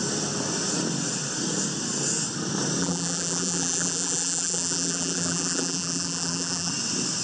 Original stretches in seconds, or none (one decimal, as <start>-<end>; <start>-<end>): 0.0-2.8; 6.7-7.2